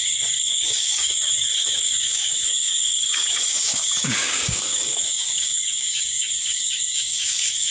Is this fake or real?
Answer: fake